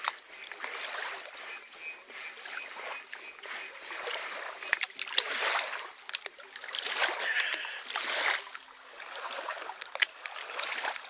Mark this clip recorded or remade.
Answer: recorded